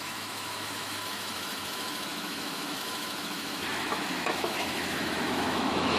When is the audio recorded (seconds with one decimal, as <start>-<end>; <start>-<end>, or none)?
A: none